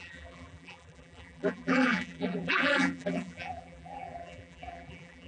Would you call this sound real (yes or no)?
no